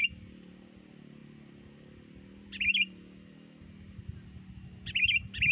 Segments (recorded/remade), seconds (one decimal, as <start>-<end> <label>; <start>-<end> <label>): 0.0-5.5 recorded